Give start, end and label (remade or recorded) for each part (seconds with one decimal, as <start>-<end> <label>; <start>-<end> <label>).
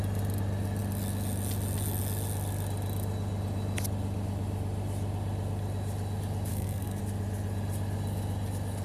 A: 0.0-6.5 recorded; 6.5-7.0 remade; 7.0-8.8 recorded